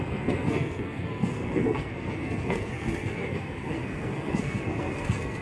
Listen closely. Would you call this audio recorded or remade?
remade